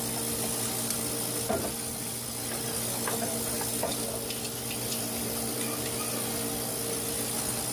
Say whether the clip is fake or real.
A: real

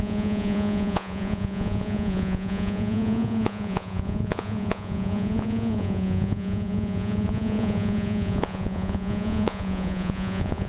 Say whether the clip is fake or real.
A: fake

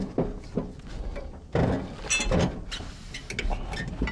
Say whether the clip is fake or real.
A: real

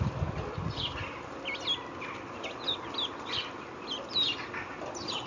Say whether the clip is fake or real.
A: real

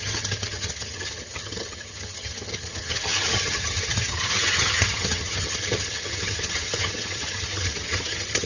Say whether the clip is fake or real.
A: fake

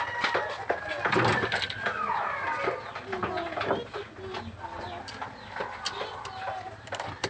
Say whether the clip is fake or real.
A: real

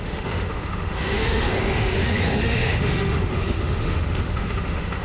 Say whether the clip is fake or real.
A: fake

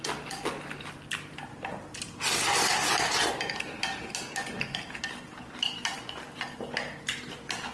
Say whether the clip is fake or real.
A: real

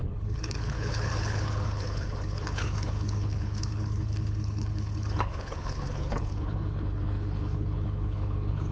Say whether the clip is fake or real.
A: fake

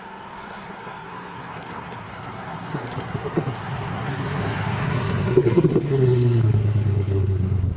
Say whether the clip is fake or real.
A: fake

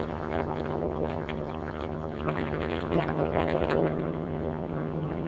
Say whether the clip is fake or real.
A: fake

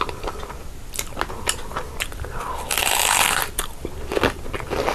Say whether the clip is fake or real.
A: real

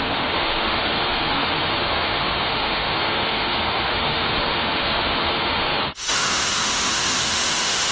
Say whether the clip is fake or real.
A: fake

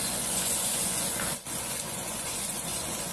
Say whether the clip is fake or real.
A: fake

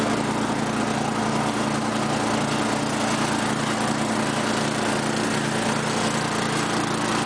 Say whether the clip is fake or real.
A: real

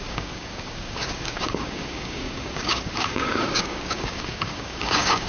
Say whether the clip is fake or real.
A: fake